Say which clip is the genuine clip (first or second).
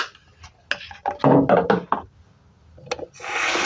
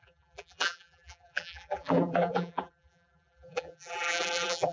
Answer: first